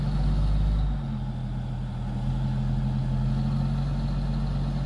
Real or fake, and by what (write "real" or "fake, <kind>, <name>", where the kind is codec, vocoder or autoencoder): real